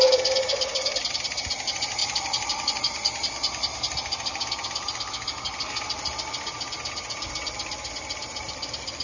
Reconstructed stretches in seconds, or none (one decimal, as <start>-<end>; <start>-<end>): 0.7-1.4